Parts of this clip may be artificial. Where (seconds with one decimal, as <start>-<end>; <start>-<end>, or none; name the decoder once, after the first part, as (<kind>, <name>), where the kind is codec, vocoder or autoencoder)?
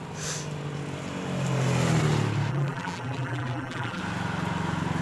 2.5-4.0 (vocoder, BigVGAN v2)